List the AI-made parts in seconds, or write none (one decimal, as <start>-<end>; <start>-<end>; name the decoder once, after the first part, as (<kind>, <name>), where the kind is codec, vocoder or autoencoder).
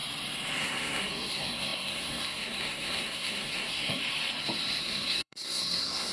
0.6-4.0 (codec, SNAC); 4.8-6.1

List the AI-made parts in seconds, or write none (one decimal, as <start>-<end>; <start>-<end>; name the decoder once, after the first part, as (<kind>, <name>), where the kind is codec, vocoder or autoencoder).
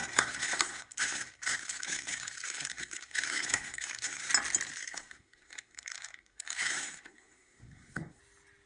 0.0-4.3 (codec, SNAC); 4.8-8.2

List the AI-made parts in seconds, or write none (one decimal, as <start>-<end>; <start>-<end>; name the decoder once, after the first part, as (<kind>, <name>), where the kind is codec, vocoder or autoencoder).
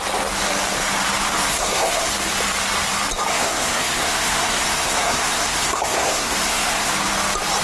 1.5-2.1 (codec, SNAC); 3.3-6.9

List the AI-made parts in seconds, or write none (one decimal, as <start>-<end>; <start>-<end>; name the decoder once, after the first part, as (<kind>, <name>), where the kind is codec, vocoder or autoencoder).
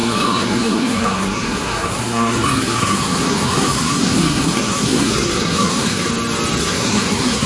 0.0-6.1 (codec, SNAC); 6.6-7.5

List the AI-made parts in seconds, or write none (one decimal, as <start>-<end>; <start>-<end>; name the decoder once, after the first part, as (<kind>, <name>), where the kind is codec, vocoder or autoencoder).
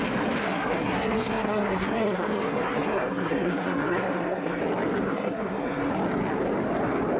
0.4-4.6 (codec, SNAC); 5.1-5.9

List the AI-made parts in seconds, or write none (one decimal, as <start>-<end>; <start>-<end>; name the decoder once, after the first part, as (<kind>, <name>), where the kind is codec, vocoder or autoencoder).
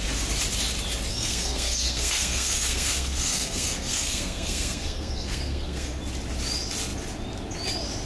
1.1-6.0 (codec, SNAC)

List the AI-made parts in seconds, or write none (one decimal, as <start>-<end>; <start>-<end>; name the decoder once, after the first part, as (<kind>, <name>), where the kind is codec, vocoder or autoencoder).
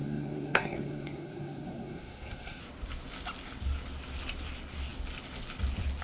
0.0-2.6 (codec, SNAC)